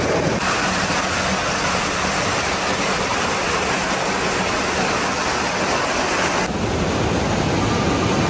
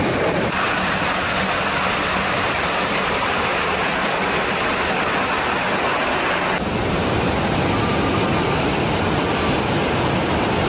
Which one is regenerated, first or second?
second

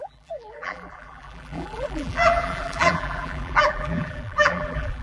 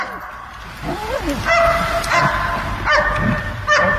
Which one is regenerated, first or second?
first